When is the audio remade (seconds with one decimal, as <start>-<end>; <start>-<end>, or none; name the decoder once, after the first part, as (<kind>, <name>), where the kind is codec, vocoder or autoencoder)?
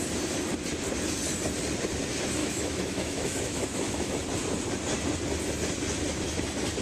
2.4-4.1 (autoencoder, DAC-VAE)